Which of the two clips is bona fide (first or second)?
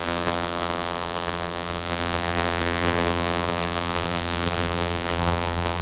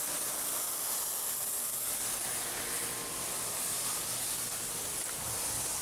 second